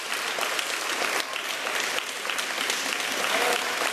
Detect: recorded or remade recorded